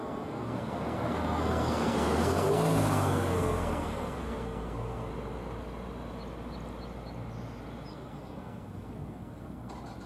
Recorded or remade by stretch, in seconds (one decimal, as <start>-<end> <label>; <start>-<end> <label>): 0.0-5.1 remade; 5.1-7.9 recorded; 7.9-9.7 remade; 9.7-10.1 recorded